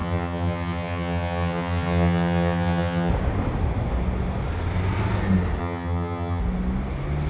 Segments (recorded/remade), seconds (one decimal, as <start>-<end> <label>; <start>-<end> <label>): 0.0-3.1 remade; 3.1-5.6 recorded; 5.6-6.4 remade; 6.4-7.3 recorded